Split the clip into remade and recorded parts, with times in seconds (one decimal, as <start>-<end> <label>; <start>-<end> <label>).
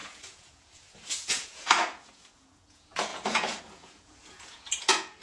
0.0-5.2 remade